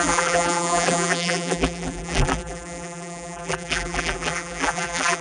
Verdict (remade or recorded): remade